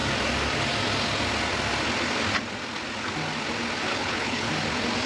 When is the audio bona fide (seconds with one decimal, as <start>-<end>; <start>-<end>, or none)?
0.0-3.9; 4.5-5.1